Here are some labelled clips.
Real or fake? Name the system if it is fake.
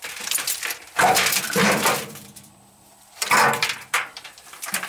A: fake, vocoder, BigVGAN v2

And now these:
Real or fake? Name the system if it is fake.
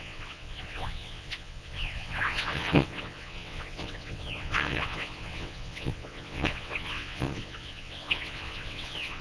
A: fake, vocoder, WaveNeXt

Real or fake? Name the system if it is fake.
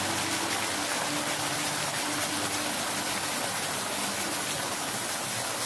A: real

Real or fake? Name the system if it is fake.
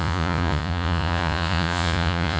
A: fake, vocoder, Vocos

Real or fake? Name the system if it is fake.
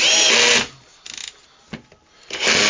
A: real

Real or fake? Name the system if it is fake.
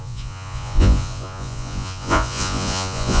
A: fake, vocoder, Vocos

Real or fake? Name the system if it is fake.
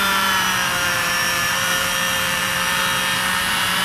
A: fake, vocoder, BigVGAN v2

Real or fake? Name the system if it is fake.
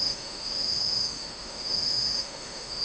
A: fake, autoencoder, DAC-VAE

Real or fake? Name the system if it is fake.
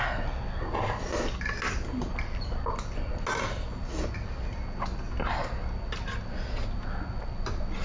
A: real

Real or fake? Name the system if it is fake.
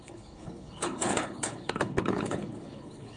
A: fake, codec, HILCodec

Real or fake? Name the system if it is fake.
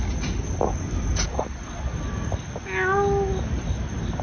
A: real